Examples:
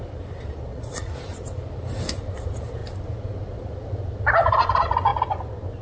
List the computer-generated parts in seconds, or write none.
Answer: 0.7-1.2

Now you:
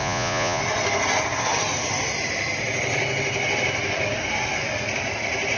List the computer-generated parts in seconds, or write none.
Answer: 0.0-0.6

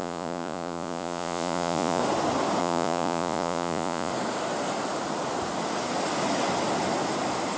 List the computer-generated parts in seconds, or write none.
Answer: 0.0-2.0; 2.6-4.1

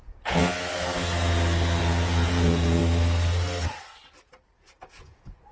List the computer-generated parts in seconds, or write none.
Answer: 0.0-0.4; 1.8-2.8; 4.8-5.5

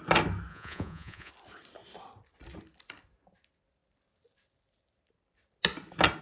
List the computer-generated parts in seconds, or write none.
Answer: 0.5-1.3

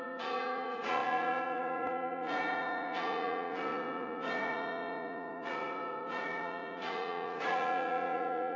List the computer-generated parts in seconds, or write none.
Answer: 0.0-8.6